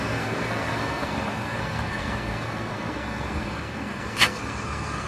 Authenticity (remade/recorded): remade